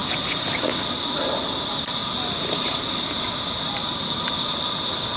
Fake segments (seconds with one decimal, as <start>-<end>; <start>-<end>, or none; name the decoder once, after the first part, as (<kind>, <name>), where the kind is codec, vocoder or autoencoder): none